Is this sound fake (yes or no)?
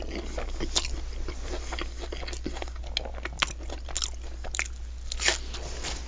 no